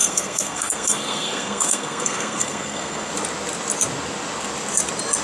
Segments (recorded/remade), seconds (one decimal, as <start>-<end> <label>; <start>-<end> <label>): 0.0-3.1 remade; 3.1-5.2 recorded